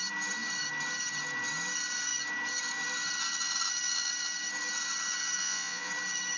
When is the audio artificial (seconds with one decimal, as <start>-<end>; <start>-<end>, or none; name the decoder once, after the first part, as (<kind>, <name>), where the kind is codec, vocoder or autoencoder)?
5.4-5.9 (vocoder, Vocos)